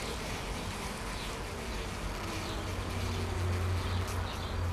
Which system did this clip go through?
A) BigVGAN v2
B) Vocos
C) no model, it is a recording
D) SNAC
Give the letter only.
C